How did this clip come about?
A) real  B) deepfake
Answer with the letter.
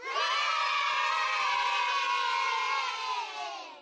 A